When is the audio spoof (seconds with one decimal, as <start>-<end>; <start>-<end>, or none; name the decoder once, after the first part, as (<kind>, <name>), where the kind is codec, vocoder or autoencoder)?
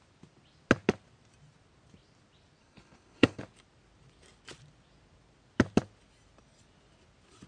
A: 2.6-3.4 (codec, HILCodec)